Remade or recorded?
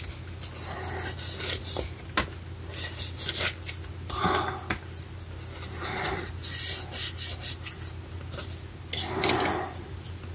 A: recorded